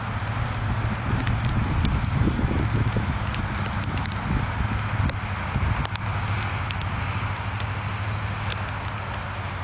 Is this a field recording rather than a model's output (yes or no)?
yes